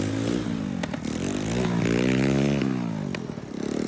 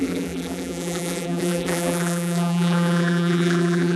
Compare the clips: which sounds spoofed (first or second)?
second